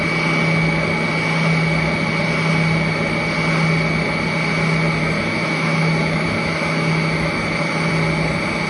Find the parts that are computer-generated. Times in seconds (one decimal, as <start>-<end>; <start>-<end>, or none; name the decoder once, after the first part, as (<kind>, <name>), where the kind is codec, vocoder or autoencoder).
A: 5.0-7.9 (autoencoder, DAC-VAE)